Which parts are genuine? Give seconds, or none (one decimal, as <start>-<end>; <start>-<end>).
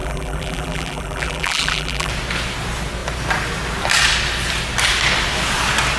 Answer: 2.1-6.0